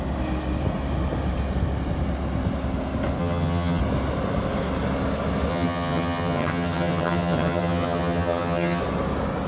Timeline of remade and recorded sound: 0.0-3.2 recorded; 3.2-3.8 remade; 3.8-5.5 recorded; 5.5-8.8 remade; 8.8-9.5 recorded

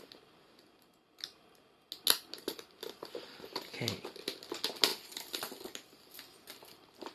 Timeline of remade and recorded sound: 0.0-4.9 recorded; 4.9-6.1 remade; 6.1-7.1 recorded

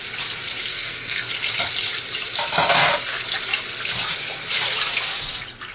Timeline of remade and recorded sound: 0.0-0.7 recorded; 0.7-1.3 remade; 1.3-5.7 recorded

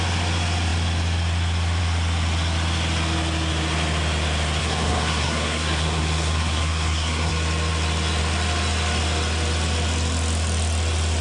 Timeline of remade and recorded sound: 0.0-4.6 recorded; 4.6-7.3 remade; 7.3-11.2 recorded

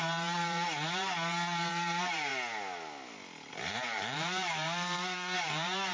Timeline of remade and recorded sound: 0.0-2.3 remade; 2.3-3.5 recorded; 3.5-5.9 remade

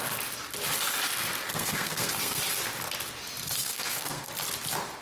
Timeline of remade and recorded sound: 0.0-1.5 recorded; 1.5-2.4 remade; 2.4-3.6 recorded; 3.6-4.3 remade; 4.3-5.0 recorded